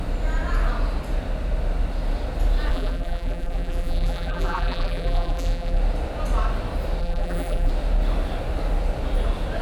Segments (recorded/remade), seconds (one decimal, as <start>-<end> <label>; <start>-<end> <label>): 0.0-2.7 recorded; 2.7-5.8 remade; 5.8-7.0 recorded; 7.0-7.7 remade; 7.7-9.6 recorded

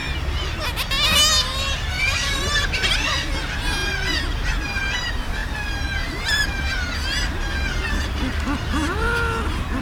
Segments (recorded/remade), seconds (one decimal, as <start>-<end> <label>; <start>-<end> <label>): 0.0-9.8 recorded

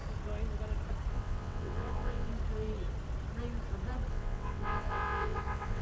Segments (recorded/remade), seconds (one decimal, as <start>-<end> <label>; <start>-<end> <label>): 0.0-1.1 recorded; 1.1-2.3 remade; 2.3-4.1 recorded; 4.1-5.8 remade

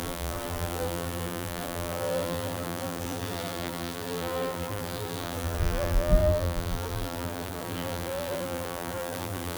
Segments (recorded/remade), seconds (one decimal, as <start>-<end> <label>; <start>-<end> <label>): 0.0-9.6 remade

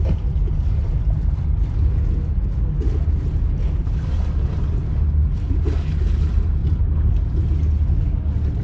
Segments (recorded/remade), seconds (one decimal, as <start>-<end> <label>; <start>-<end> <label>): 0.0-8.6 recorded

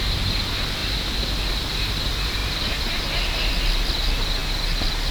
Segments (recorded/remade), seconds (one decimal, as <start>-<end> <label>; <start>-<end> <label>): 0.0-5.1 recorded

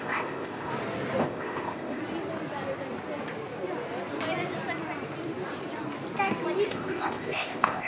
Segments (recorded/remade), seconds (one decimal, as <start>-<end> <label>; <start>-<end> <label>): 0.0-0.7 remade; 0.7-1.2 recorded; 1.2-2.0 remade; 2.0-6.7 recorded; 6.7-7.9 remade

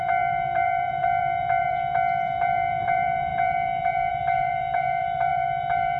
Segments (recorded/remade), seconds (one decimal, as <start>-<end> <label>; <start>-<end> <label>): 0.0-6.0 remade